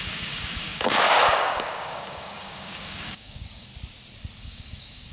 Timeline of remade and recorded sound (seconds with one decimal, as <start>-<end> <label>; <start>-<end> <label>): 0.0-3.7 remade; 3.7-4.4 recorded; 4.4-5.1 remade